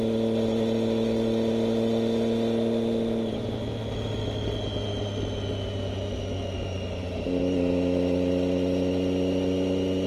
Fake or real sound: real